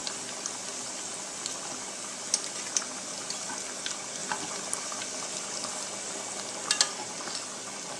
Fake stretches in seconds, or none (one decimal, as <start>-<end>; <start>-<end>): none